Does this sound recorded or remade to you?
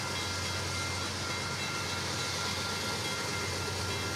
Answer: recorded